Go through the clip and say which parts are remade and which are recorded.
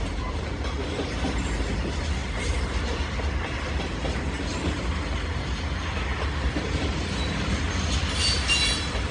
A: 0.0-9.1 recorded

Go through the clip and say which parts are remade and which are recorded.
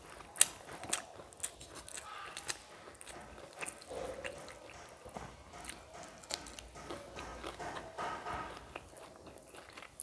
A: 0.0-10.0 recorded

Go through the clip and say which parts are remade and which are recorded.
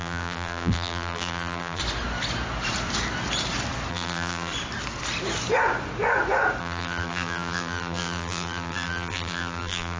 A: 0.0-1.8 remade; 1.8-3.9 recorded; 3.9-4.5 remade; 4.5-6.6 recorded; 6.6-10.0 remade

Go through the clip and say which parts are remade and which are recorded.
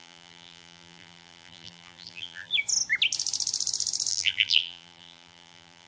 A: 0.0-2.5 remade; 2.5-4.1 recorded; 4.1-5.9 remade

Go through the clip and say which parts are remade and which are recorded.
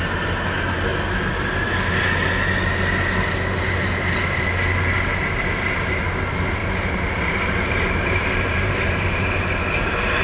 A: 0.0-6.6 recorded; 6.6-9.4 remade; 9.4-10.2 recorded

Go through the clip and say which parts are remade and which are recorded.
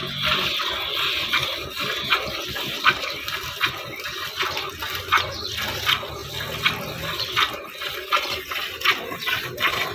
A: 0.0-9.9 recorded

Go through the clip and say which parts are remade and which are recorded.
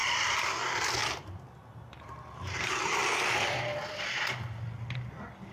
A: 0.0-0.5 remade; 0.5-1.0 recorded; 1.0-1.7 remade; 1.7-3.0 recorded; 3.0-4.0 remade; 4.0-5.5 recorded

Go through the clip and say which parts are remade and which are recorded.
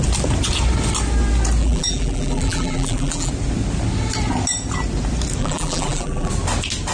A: 0.0-1.6 recorded; 1.6-3.3 remade; 3.3-5.4 recorded; 5.4-6.3 remade; 6.3-6.9 recorded